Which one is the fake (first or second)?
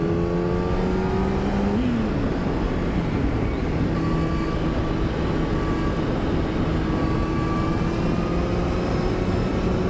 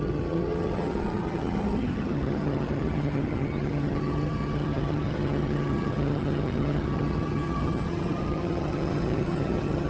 second